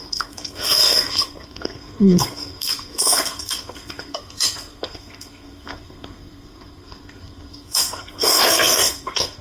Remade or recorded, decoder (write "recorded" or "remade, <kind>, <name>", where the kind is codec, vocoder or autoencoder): remade, codec, SNAC